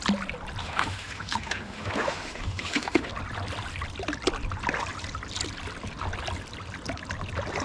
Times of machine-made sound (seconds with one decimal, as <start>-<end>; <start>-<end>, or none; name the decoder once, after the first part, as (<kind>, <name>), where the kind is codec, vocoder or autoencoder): 0.6-3.1 (autoencoder, DAC-VAE)